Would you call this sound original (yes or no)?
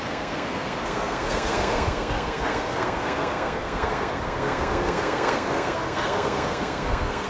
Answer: no